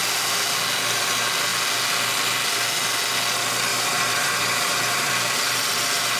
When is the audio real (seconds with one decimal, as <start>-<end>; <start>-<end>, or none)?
0.0-3.7; 5.1-6.2